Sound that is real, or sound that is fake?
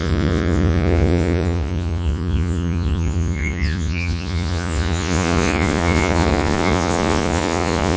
fake